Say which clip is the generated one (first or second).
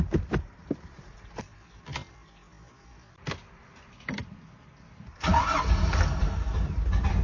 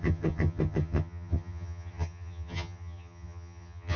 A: second